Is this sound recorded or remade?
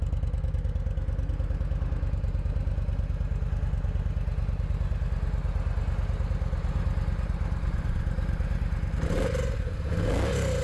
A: recorded